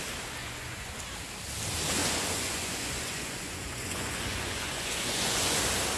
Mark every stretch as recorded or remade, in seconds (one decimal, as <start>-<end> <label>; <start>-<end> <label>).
0.0-0.4 recorded; 0.4-1.0 remade; 1.0-2.0 recorded; 2.0-5.6 remade; 5.6-6.0 recorded